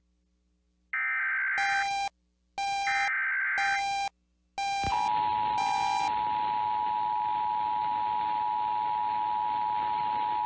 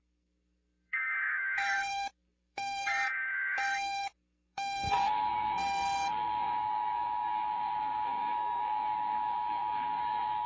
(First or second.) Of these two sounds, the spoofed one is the second